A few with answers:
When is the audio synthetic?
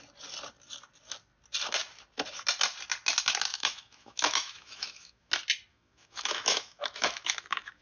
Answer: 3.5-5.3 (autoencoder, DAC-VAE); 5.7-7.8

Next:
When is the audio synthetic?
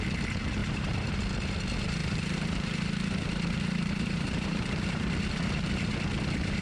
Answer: 0.6-1.2 (vocoder, BigVGAN v2); 2.0-5.1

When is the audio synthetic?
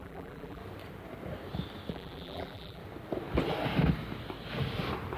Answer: 0.0-0.6 (vocoder, BigVGAN v2); 1.9-2.8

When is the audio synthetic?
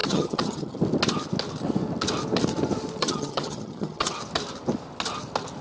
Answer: 0.0-0.8 (vocoder, HiFi-GAN); 3.0-4.1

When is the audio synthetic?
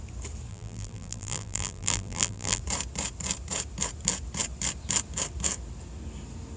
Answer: 0.5-2.6 (vocoder, BigVGAN v2)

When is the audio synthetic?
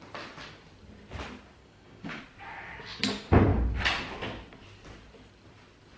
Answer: 1.6-2.2 (codec, DAC)